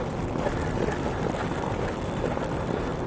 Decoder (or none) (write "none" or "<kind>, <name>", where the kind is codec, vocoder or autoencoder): none